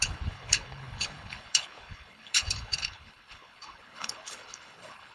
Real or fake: fake